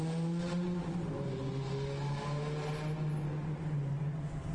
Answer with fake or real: real